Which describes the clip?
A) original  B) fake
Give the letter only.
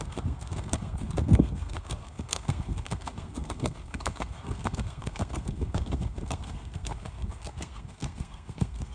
B